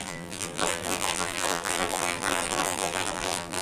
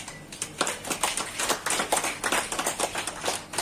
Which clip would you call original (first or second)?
second